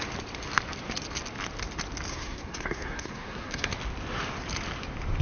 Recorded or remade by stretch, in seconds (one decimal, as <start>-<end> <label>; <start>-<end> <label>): 0.0-2.1 recorded; 2.1-3.7 remade; 3.7-5.2 recorded